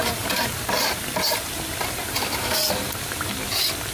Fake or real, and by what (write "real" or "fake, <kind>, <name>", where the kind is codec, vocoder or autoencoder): real